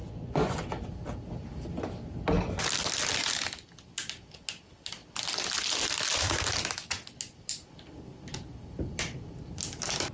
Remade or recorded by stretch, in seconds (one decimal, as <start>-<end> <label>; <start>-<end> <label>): 0.0-0.6 remade; 0.6-10.1 recorded